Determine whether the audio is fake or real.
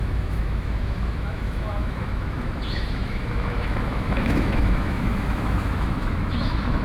fake